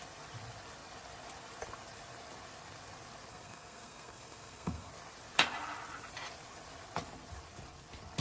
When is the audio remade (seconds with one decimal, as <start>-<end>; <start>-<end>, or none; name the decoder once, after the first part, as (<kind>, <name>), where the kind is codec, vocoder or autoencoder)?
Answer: 3.3-4.9 (codec, SNAC)